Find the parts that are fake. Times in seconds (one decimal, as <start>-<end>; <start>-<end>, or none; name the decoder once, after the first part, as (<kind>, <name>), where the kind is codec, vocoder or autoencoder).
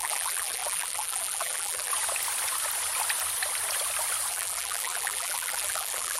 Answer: 0.0-1.9 (vocoder, BigVGAN v2); 4.3-6.2